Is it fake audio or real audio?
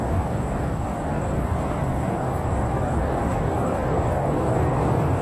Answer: fake